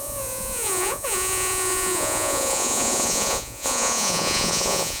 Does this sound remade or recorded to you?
remade